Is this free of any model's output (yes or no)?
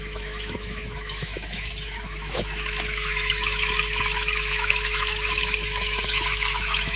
no